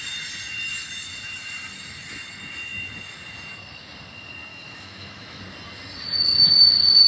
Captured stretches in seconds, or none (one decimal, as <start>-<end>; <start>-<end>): 0.0-4.5; 5.4-7.1